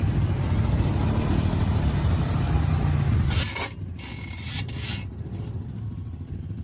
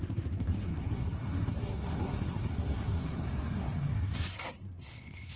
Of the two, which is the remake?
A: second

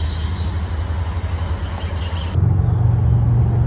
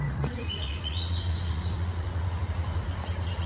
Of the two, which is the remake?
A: second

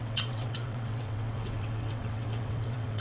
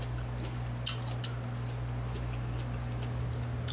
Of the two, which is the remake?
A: first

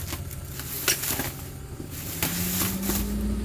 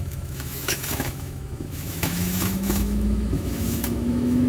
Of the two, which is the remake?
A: second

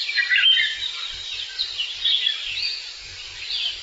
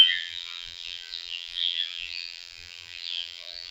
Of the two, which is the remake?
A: second